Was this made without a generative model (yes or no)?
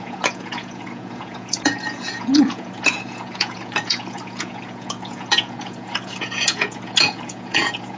no